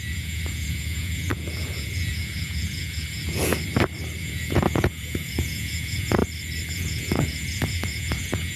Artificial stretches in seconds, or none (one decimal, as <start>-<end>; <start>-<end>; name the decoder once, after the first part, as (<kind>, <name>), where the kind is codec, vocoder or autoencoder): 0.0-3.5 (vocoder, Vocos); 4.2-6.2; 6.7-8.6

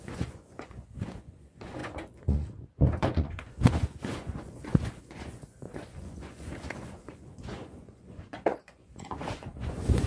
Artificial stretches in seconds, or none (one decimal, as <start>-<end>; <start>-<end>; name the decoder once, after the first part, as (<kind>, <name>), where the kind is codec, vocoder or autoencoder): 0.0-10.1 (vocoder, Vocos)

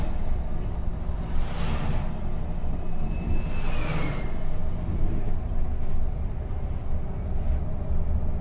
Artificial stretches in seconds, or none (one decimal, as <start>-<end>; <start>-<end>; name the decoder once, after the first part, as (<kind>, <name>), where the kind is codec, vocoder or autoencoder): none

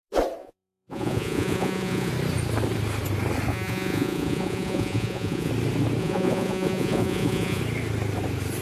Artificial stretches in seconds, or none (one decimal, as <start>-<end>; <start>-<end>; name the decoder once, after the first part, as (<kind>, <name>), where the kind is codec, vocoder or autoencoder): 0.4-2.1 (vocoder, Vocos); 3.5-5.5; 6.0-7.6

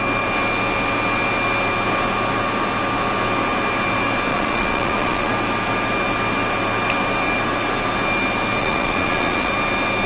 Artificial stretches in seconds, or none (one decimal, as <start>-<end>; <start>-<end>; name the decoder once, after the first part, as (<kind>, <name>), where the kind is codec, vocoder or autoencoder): 4.3-5.3 (vocoder, Vocos); 8.6-9.5

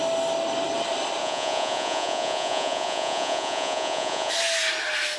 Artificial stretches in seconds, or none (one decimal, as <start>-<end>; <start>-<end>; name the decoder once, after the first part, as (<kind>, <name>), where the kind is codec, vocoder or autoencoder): 1.2-4.3 (vocoder, Vocos)

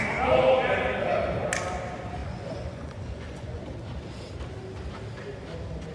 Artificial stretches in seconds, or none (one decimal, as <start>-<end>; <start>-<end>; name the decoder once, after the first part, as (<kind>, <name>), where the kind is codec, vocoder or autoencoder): 2.2-3.6 (vocoder, Vocos)

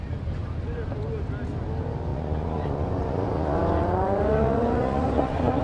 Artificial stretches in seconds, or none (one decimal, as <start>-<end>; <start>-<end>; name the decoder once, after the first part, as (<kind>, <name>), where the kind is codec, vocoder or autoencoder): 2.1-5.6 (vocoder, Vocos)